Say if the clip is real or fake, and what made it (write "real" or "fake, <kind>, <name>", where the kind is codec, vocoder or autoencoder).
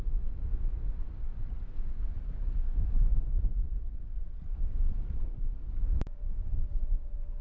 real